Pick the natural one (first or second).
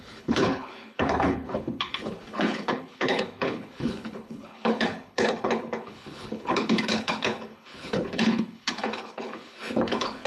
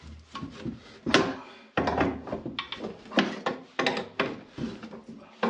second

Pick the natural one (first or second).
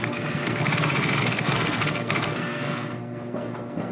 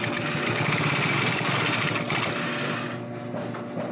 second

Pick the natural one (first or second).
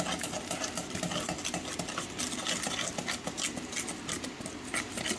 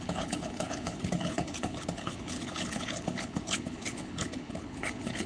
first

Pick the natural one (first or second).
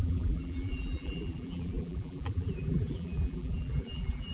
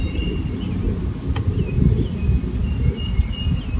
second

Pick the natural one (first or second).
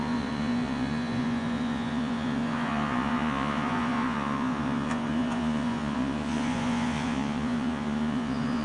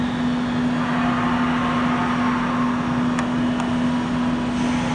second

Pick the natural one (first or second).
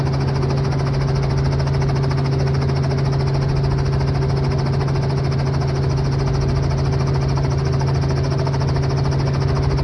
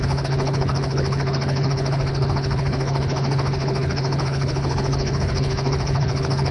first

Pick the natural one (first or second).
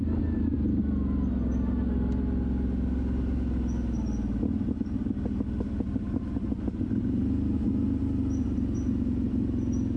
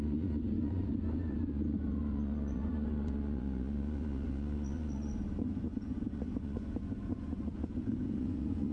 first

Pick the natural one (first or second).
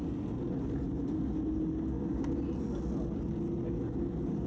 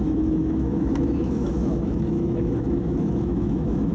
first